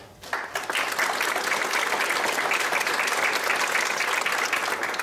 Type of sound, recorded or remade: recorded